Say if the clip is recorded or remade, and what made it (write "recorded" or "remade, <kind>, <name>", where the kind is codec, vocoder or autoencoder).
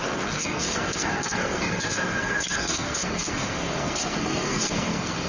remade, codec, SNAC